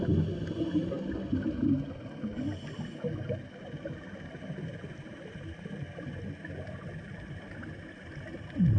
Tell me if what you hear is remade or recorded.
recorded